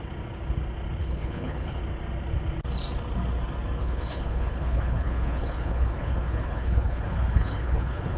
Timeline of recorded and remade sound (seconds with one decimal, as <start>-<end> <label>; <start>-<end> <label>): 0.0-1.0 recorded; 1.0-1.8 remade; 1.8-3.8 recorded; 3.8-8.2 remade